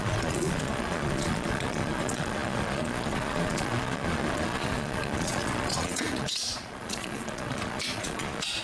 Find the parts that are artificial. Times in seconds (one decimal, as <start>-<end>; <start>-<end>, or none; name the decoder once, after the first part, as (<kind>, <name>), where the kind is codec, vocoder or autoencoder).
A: 0.0-8.6 (vocoder, Vocos)